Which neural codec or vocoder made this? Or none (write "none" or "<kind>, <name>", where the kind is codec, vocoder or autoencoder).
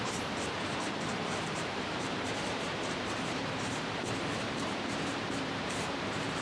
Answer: vocoder, BigVGAN v2